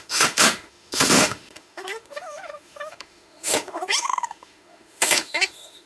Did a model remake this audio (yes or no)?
yes